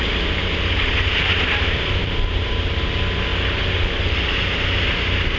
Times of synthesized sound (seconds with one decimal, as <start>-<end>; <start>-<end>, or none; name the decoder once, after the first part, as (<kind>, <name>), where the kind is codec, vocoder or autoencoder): 2.0-2.9 (vocoder, BigVGAN v2)